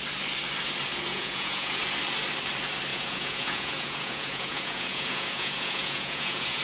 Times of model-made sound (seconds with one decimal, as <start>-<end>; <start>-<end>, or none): 1.1-1.8; 2.9-6.6